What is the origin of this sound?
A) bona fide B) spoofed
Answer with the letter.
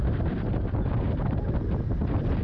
A